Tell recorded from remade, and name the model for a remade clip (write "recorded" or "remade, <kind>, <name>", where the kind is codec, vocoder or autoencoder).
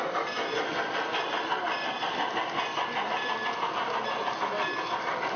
recorded